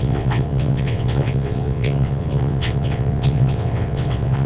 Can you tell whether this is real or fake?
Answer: fake